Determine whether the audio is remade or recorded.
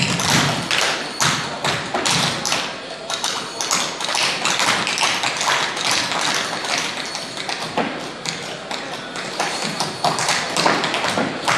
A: recorded